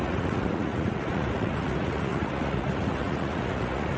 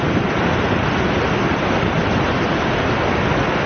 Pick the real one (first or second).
second